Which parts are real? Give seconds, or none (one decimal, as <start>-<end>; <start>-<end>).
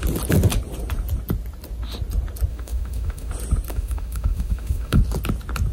0.0-2.5; 3.3-3.7; 5.0-5.7